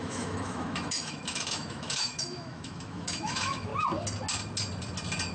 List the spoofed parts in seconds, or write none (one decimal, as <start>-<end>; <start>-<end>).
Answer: 0.0-3.7